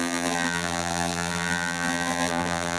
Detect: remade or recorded remade